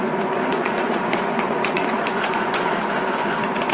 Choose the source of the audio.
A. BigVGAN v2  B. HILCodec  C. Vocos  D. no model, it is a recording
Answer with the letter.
C